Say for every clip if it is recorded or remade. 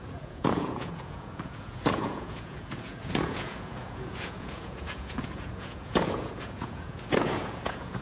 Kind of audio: remade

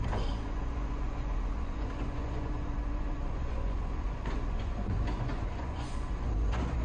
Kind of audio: remade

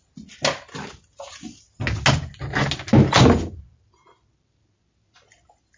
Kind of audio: recorded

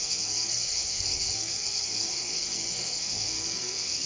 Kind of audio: remade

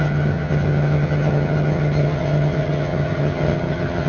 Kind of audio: remade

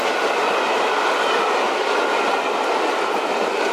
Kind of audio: recorded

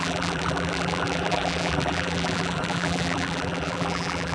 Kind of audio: remade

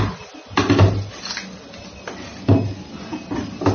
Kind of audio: recorded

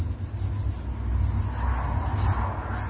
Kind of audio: recorded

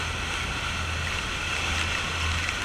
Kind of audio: recorded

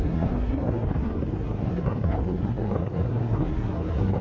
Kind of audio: remade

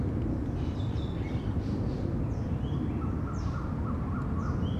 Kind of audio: recorded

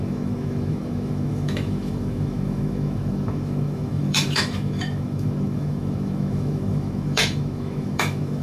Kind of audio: remade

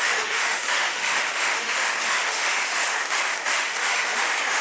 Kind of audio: remade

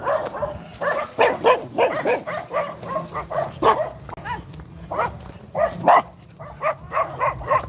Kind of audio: recorded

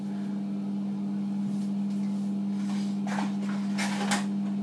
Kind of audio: recorded